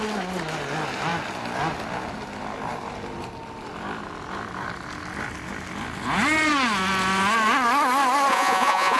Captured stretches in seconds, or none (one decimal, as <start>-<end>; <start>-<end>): 0.0-8.3